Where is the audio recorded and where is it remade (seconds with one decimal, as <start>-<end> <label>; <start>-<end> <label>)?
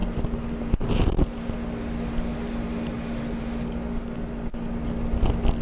0.0-5.6 recorded